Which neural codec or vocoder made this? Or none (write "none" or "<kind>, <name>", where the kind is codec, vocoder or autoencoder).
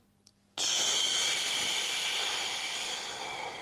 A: none